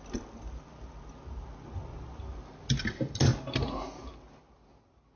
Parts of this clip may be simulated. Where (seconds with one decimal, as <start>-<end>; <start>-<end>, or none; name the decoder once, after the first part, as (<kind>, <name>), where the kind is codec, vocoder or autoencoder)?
none